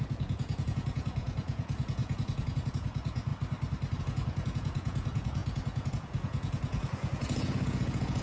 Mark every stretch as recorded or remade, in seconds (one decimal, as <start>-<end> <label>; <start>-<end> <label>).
0.0-3.3 remade; 3.3-4.0 recorded; 4.0-8.2 remade